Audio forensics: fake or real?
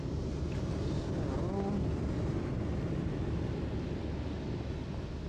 real